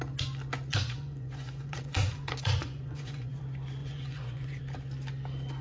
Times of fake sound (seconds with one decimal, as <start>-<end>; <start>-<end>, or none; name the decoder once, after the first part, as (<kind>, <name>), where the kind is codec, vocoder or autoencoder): 0.7-3.4 (vocoder, Vocos); 3.8-4.6